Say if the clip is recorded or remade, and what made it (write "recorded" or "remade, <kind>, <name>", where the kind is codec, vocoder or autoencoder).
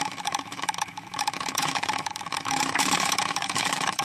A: remade, autoencoder, DAC-VAE